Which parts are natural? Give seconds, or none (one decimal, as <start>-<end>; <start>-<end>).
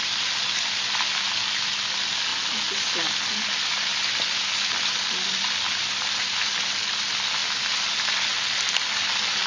0.0-7.4; 7.9-9.5